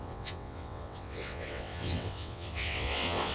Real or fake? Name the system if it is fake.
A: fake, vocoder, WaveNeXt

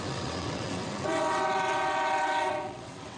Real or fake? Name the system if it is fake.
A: fake, vocoder, WaveNeXt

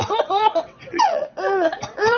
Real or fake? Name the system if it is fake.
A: fake, vocoder, WaveNeXt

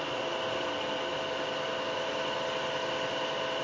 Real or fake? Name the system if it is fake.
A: real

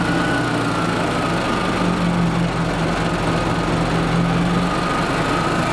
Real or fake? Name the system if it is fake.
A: real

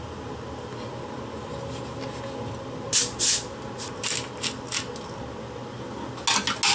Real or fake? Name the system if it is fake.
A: real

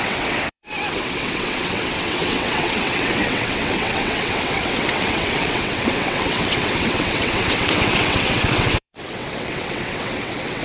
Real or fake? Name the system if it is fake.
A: fake, vocoder, WaveNeXt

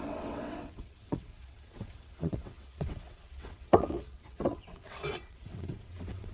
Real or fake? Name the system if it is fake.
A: fake, vocoder, WaveNeXt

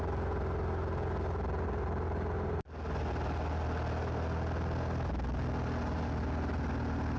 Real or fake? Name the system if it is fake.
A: real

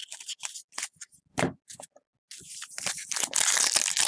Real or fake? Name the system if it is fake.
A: real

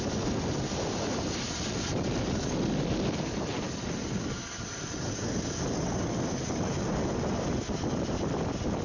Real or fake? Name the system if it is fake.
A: real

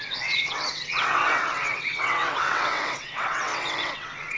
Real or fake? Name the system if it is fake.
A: fake, vocoder, WaveNeXt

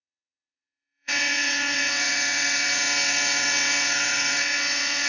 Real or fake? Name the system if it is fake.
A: fake, vocoder, WaveNeXt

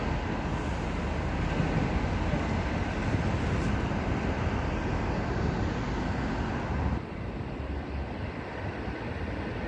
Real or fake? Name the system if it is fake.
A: real